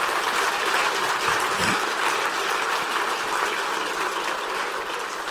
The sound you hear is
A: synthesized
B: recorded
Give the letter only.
B